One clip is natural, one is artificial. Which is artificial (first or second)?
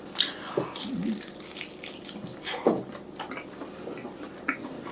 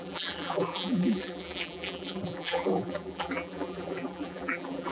second